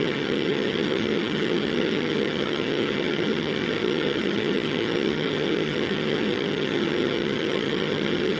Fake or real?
fake